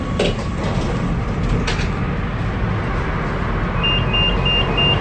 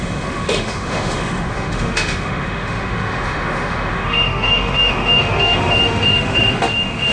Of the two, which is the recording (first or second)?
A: first